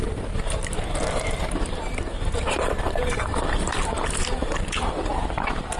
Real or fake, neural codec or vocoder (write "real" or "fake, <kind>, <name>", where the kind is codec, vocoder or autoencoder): fake, vocoder, BigVGAN v2